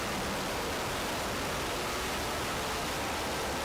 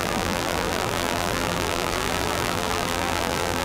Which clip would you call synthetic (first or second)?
second